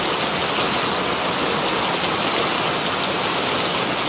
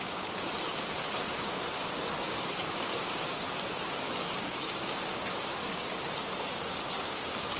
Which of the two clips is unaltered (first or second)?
first